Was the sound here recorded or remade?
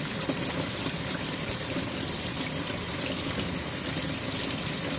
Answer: remade